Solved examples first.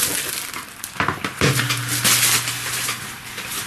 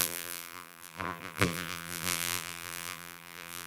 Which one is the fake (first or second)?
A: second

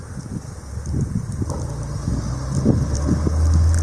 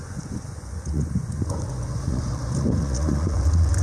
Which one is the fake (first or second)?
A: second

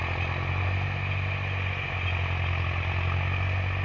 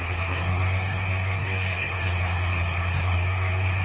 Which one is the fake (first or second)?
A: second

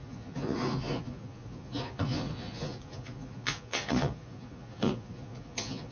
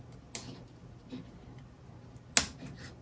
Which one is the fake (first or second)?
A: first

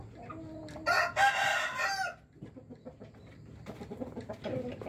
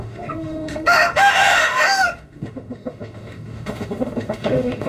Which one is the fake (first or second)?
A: second